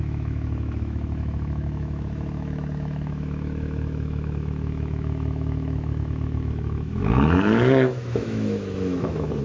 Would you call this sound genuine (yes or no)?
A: no